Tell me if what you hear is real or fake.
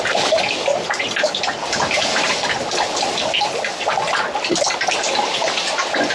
real